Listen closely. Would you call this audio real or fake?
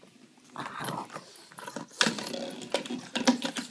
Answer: real